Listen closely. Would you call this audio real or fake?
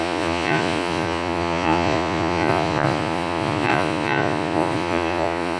fake